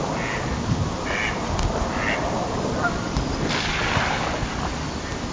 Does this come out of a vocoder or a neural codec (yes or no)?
no